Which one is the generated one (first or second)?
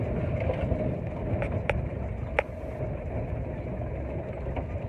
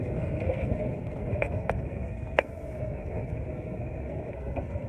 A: second